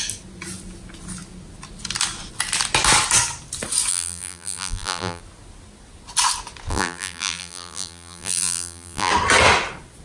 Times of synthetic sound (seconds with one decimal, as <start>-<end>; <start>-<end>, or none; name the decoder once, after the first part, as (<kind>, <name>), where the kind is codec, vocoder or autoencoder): 3.9-5.2 (vocoder, BigVGAN v2); 6.7-9.1